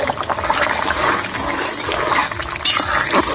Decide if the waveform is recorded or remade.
recorded